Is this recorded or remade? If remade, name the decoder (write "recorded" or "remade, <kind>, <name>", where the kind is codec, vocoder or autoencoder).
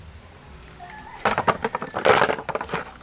recorded